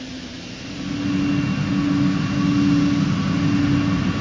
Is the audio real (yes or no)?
yes